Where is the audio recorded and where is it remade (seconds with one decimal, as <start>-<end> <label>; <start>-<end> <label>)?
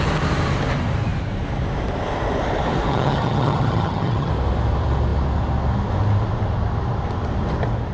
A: 0.0-2.9 recorded; 2.9-4.3 remade; 4.3-7.9 recorded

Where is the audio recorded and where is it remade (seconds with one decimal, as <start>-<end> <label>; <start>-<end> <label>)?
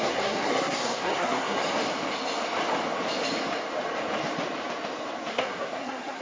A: 0.0-1.6 remade; 1.6-5.3 recorded; 5.3-6.2 remade